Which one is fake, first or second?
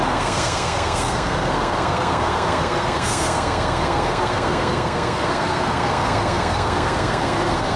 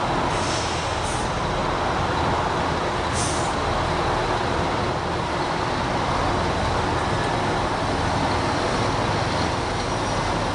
first